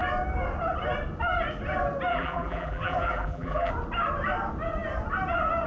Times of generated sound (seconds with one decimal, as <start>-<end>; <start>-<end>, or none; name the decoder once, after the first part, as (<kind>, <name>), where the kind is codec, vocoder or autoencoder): 2.1-3.7 (vocoder, BigVGAN v2)